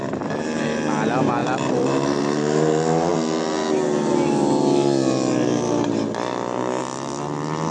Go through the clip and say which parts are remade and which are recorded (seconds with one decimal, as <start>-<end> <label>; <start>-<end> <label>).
0.0-7.7 recorded